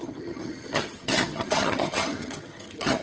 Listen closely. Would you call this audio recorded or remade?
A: remade